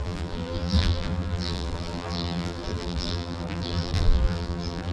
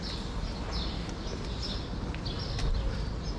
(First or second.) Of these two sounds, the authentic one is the second